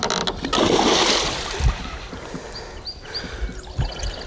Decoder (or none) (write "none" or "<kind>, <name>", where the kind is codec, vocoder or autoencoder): none